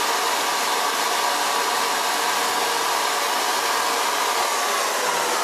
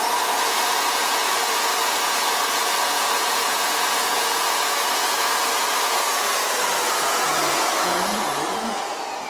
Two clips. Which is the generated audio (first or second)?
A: second